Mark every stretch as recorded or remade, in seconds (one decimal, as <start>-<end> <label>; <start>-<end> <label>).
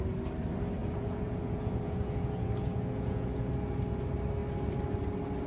0.0-0.8 recorded; 0.8-3.5 remade; 3.5-5.5 recorded